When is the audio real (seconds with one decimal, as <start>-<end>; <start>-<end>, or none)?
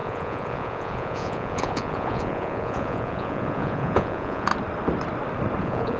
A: 4.5-5.6